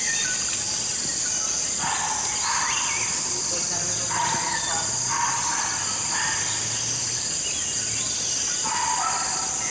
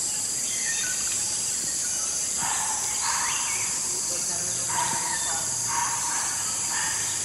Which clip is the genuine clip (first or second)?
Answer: first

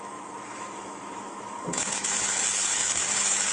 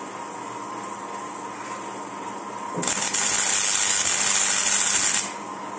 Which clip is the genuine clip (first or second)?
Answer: second